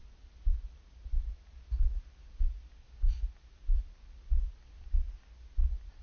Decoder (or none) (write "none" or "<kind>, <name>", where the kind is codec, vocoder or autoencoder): none